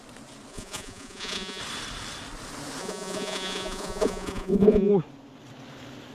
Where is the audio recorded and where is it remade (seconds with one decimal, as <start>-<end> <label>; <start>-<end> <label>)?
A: 0.0-0.5 recorded; 0.5-1.6 remade; 1.6-2.8 recorded; 2.8-4.9 remade; 4.9-6.1 recorded